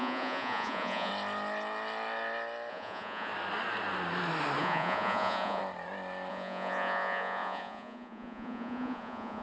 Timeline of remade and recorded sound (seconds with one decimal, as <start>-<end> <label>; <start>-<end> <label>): 0.0-1.1 remade; 1.1-2.7 recorded; 2.7-3.3 remade; 3.3-4.6 recorded; 4.6-5.6 remade; 5.6-6.3 recorded; 6.3-9.4 remade